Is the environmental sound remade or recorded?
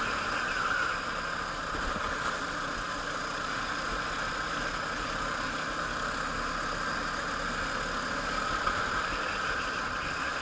recorded